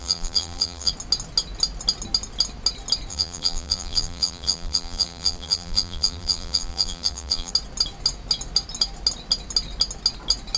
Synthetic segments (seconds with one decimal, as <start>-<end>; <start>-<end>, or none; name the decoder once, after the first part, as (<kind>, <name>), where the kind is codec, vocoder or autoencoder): 0.0-0.9 (vocoder, BigVGAN v2); 3.1-7.5